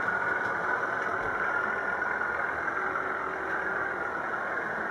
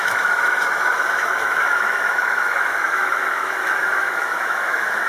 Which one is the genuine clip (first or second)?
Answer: first